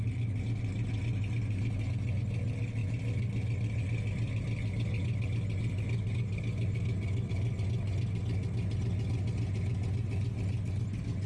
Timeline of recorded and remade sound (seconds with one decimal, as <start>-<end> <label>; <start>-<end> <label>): 0.0-11.3 recorded